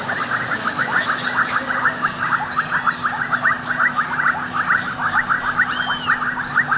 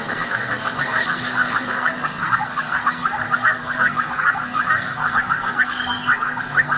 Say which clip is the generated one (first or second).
second